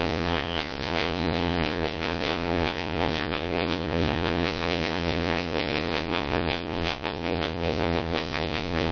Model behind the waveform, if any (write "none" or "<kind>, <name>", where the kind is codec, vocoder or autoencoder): vocoder, Vocos